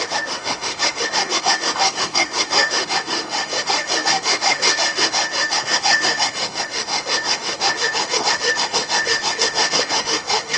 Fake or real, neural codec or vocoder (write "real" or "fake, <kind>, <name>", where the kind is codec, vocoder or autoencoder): fake, autoencoder, DAC-VAE